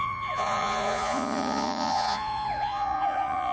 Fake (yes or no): yes